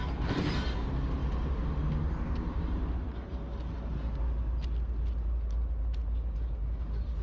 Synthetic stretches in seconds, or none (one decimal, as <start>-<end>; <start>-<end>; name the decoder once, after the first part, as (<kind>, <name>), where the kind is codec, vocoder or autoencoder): none